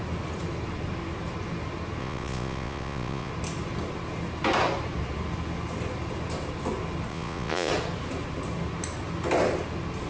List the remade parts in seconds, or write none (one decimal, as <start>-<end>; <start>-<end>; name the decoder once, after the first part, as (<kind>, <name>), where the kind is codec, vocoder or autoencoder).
2.0-3.3 (vocoder, Vocos); 7.1-7.7

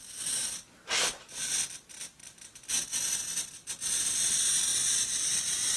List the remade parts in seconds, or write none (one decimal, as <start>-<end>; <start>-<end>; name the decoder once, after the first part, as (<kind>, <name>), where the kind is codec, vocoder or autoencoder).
none

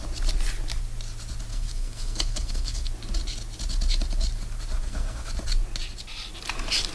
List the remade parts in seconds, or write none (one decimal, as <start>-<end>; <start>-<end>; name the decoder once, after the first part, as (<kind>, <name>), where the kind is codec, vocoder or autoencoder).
1.5-2.9 (codec, SNAC); 4.8-5.3

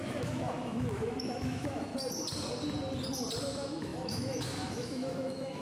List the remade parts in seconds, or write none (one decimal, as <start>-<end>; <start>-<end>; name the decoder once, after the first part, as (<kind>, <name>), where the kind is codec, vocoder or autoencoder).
0.0-1.9 (autoencoder, DAC-VAE); 3.4-5.6

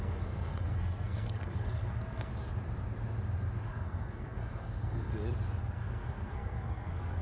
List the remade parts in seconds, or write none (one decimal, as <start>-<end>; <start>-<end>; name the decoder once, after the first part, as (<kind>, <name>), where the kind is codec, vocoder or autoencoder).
0.0-2.3 (codec, SNAC); 3.7-5.1; 5.6-7.2